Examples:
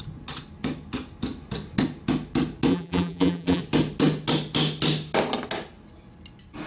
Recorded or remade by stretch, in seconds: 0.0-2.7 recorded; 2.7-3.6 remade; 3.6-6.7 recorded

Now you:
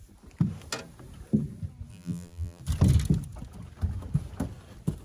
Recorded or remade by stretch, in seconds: 0.0-1.9 recorded; 1.9-2.6 remade; 2.6-5.0 recorded

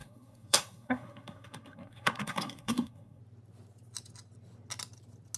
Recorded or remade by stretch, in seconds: 0.0-3.2 remade; 3.2-5.4 recorded

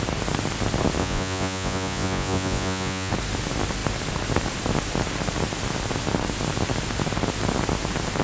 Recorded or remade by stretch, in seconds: 0.0-1.0 recorded; 1.0-3.1 remade; 3.1-8.2 recorded

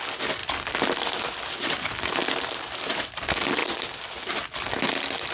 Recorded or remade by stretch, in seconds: 0.0-0.4 recorded; 0.4-2.4 remade; 2.4-3.6 recorded; 3.6-4.8 remade; 4.8-5.3 recorded